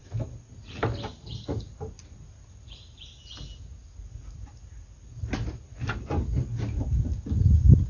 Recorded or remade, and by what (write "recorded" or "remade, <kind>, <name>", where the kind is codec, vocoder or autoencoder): recorded